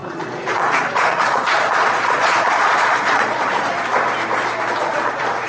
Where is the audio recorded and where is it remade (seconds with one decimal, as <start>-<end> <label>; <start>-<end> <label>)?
0.0-3.9 remade; 3.9-4.8 recorded; 4.8-5.5 remade